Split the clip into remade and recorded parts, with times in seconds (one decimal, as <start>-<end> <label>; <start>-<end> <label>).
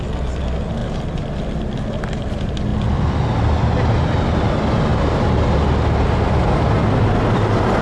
0.0-7.8 recorded